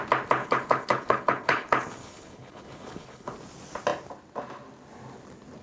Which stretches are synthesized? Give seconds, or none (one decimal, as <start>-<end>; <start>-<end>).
0.4-3.3